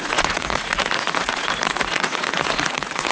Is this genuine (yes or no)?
no